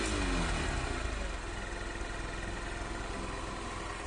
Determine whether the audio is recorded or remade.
recorded